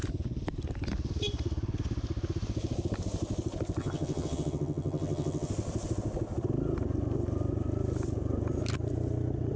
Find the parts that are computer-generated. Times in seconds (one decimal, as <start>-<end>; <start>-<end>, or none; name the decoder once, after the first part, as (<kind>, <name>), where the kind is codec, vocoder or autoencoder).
3.8-5.5 (vocoder, HiFi-GAN)